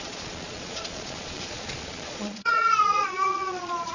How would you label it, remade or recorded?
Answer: remade